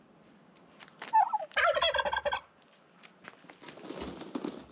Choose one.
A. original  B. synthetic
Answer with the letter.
A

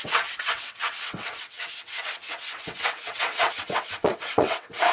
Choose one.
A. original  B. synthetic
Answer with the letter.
B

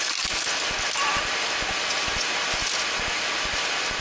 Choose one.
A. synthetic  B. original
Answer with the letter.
B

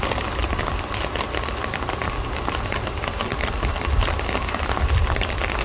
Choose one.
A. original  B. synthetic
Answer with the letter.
A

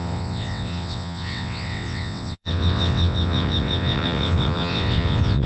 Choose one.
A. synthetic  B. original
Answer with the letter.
A